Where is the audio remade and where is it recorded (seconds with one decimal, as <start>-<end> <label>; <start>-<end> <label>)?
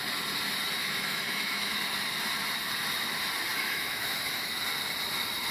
0.0-0.8 recorded; 0.8-1.8 remade; 1.8-3.5 recorded; 3.5-4.6 remade; 4.6-5.5 recorded